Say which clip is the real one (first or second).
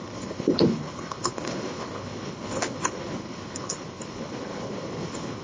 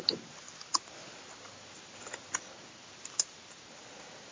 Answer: second